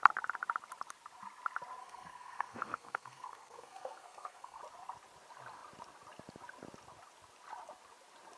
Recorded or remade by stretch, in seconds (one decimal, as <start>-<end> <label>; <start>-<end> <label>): 0.0-1.8 recorded; 1.8-4.6 remade; 4.6-8.4 recorded